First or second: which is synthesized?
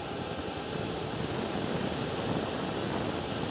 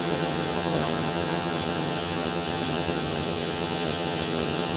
second